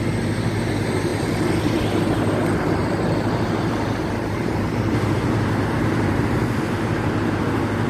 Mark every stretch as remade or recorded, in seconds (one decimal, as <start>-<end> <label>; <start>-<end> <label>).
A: 0.0-2.8 recorded; 2.8-7.5 remade; 7.5-7.9 recorded

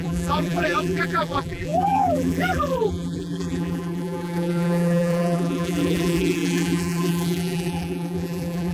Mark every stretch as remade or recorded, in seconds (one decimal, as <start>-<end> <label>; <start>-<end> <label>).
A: 0.0-8.7 remade